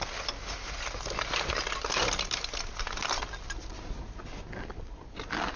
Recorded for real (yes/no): yes